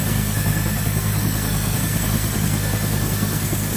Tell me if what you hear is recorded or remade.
remade